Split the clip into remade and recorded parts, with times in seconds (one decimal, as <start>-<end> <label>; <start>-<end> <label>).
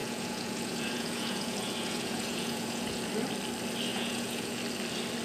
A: 0.0-3.1 remade; 3.1-3.9 recorded; 3.9-4.6 remade; 4.6-5.2 recorded